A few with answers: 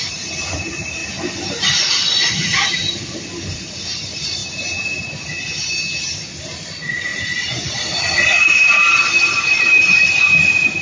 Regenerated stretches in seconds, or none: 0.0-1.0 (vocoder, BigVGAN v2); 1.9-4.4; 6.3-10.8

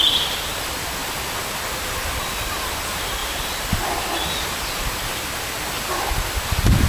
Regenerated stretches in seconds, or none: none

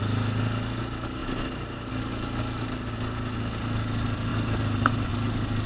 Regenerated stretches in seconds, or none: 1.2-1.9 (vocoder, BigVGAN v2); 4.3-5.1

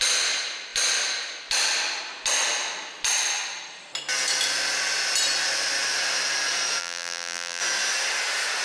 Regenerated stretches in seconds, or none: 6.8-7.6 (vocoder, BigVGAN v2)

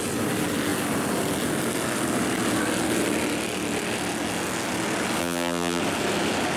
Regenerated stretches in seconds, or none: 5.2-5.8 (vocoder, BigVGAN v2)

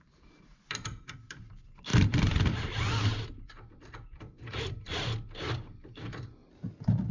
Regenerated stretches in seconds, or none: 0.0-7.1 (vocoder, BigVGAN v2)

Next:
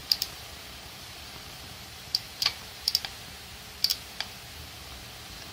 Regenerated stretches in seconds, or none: 0.0-2.9 (vocoder, BigVGAN v2)

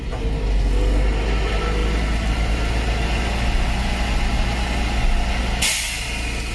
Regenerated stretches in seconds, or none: none